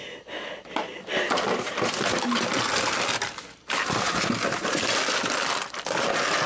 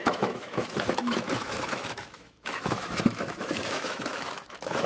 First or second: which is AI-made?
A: second